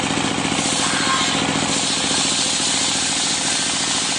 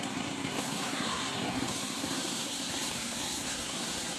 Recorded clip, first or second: first